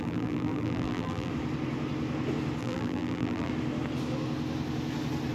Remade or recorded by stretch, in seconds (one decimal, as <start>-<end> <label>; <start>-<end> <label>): 0.0-1.3 remade; 1.3-2.6 recorded; 2.6-3.5 remade; 3.5-5.3 recorded